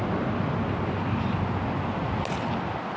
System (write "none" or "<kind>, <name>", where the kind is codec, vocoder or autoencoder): none